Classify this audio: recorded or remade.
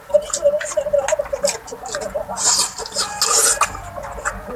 recorded